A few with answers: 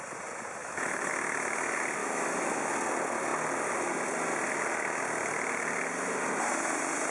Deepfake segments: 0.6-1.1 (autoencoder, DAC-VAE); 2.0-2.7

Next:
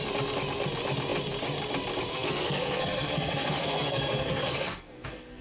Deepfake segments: 2.1-5.4 (codec, SNAC)

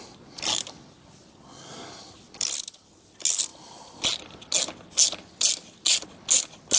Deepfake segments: none

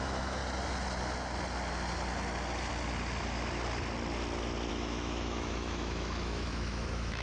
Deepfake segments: 0.0-0.4 (autoencoder, DAC-VAE); 4.7-7.2

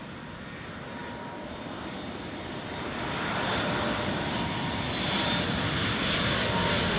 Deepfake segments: none

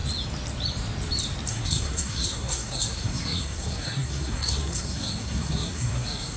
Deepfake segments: 1.5-6.4 (codec, SNAC)